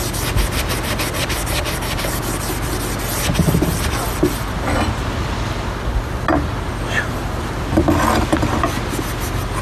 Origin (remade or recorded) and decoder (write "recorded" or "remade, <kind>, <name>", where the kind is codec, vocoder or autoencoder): recorded